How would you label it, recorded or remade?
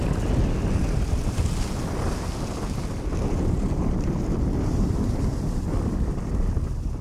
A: recorded